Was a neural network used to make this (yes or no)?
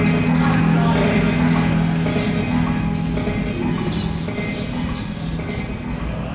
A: no